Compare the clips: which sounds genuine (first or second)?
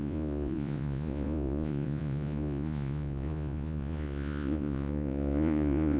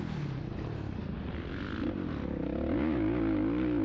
second